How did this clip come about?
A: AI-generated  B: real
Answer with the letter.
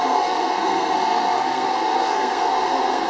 A